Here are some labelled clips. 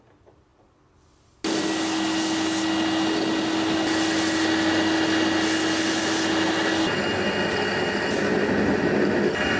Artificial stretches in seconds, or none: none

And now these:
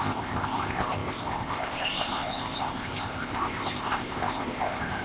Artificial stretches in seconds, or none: 0.0-5.0

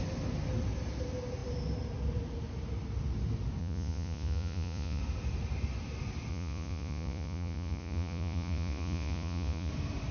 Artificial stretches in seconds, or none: 3.6-5.0; 6.3-9.7

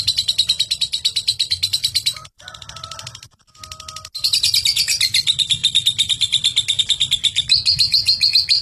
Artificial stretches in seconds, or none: none

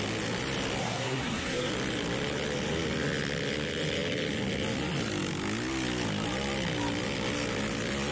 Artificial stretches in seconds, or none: 0.8-1.7